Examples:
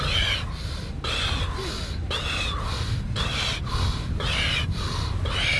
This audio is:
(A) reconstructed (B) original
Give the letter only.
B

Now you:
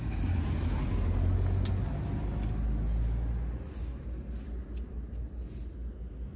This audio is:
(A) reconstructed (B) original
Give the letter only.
B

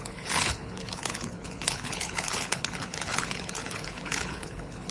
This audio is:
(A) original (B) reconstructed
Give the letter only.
B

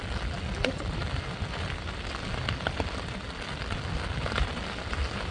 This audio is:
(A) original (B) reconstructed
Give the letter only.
A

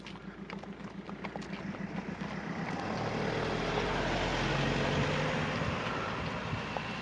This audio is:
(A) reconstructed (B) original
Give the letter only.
B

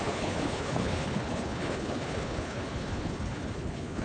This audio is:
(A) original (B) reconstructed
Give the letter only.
B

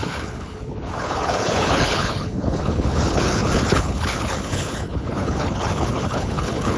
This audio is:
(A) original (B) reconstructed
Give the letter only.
B